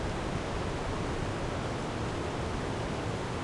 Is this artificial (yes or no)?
no